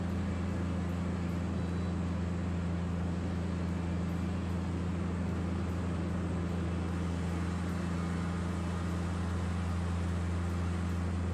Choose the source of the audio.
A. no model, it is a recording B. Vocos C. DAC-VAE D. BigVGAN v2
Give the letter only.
A